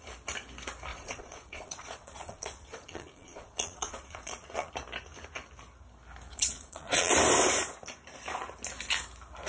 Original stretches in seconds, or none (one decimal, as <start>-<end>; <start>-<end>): 0.0-0.9; 4.7-6.3; 7.1-9.5